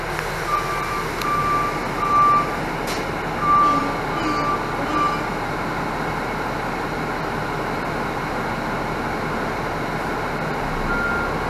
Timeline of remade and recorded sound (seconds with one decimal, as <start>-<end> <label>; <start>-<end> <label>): 0.0-11.5 recorded